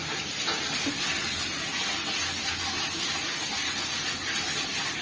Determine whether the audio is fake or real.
real